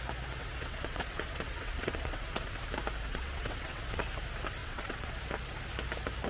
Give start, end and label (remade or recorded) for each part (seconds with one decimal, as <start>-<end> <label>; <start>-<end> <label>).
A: 0.0-0.4 recorded; 0.4-2.7 remade; 2.7-3.1 recorded; 3.1-4.0 remade; 4.0-4.6 recorded; 4.6-5.2 remade; 5.2-6.3 recorded